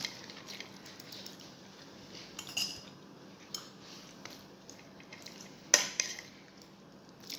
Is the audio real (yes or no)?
yes